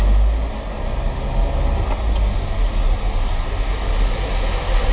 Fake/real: real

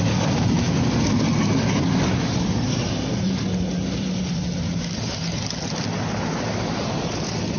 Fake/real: real